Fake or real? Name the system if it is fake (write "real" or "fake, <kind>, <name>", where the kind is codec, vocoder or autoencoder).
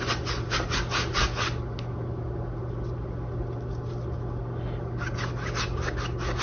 real